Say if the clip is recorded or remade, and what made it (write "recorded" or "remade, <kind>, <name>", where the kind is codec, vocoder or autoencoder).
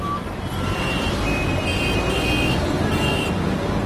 recorded